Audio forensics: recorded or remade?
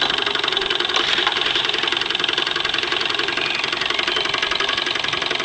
recorded